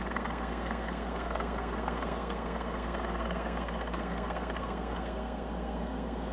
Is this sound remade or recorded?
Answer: remade